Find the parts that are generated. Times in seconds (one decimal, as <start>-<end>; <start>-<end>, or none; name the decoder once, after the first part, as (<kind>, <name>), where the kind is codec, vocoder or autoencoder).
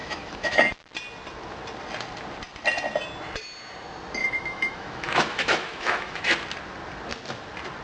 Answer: 0.0-0.7 (autoencoder, DAC-VAE); 4.2-6.2